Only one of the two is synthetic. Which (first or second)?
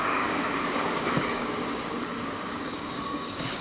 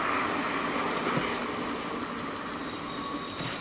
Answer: first